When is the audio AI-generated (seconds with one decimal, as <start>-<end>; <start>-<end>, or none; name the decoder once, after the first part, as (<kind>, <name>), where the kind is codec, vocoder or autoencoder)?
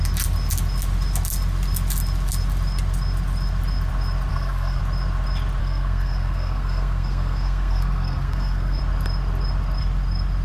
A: 4.3-4.8 (codec, SNAC); 5.6-8.8